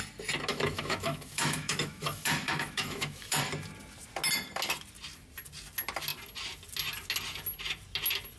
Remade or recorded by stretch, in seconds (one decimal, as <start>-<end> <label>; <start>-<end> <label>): 0.0-0.5 recorded; 0.5-3.4 remade; 3.4-8.4 recorded